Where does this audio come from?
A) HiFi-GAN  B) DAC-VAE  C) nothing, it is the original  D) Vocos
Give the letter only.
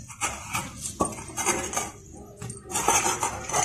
C